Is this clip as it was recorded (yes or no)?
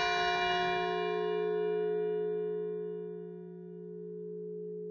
yes